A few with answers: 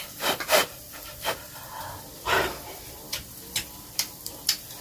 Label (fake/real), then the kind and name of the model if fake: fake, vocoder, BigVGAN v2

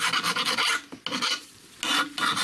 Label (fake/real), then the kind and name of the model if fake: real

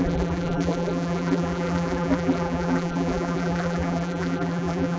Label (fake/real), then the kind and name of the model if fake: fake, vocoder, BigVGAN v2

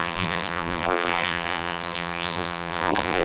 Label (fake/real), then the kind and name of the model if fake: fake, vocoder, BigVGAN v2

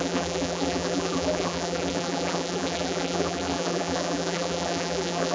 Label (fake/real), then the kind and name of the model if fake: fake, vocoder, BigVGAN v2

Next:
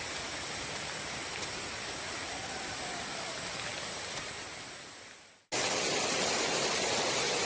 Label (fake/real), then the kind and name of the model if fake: real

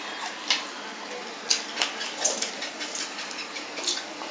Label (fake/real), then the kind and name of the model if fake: fake, vocoder, BigVGAN v2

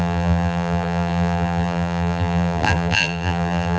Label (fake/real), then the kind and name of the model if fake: fake, vocoder, BigVGAN v2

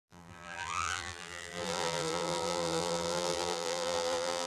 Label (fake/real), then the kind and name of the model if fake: fake, vocoder, BigVGAN v2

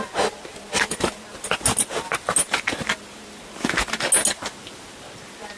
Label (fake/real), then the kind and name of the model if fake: real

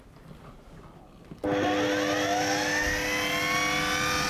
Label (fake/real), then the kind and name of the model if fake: real